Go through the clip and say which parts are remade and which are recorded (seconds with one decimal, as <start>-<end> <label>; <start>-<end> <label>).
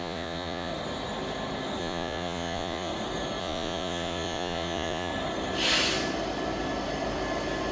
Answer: 0.0-0.7 remade; 0.7-1.8 recorded; 1.8-2.9 remade; 2.9-3.4 recorded; 3.4-5.1 remade; 5.1-7.7 recorded